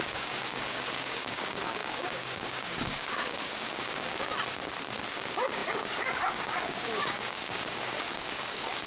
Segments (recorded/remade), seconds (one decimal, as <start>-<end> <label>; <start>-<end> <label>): 0.0-4.3 remade; 4.3-5.1 recorded; 5.1-8.9 remade